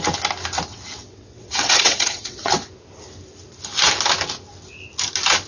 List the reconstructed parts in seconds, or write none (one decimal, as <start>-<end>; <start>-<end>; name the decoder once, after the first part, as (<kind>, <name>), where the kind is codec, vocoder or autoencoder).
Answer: 0.7-2.5 (vocoder, WaveNeXt)